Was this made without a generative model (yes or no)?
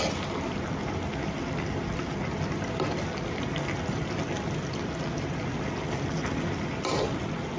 yes